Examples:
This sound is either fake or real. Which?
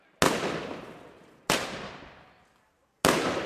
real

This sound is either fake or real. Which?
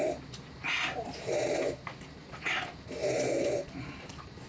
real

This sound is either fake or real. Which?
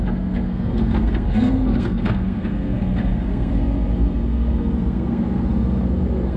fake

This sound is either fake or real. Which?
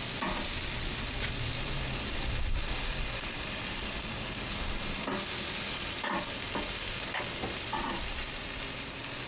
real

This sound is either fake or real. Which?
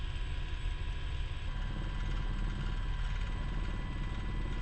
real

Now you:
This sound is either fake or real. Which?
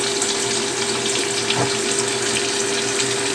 real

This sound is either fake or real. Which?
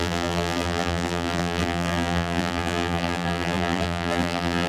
fake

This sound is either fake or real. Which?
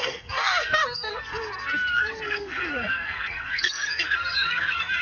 fake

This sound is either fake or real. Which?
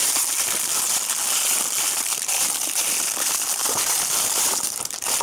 fake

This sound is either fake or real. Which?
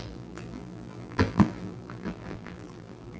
fake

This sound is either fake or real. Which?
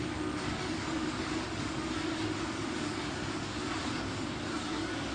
fake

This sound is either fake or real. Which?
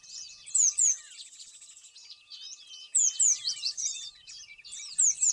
fake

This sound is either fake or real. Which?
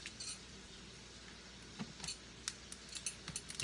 real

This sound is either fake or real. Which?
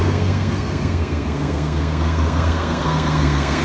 fake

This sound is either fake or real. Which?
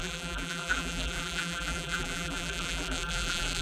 fake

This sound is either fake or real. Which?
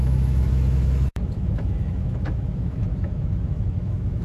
fake